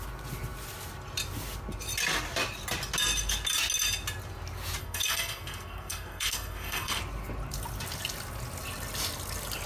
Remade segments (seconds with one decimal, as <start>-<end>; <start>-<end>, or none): 4.8-7.0